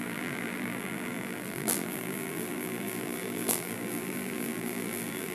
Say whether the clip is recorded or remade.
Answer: remade